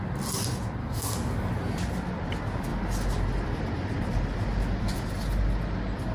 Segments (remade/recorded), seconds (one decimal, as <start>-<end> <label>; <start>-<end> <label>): 0.0-0.8 recorded; 0.8-1.5 remade; 1.5-6.1 recorded